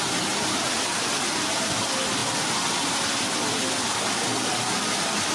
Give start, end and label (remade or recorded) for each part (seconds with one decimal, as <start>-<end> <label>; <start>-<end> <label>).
0.0-5.3 recorded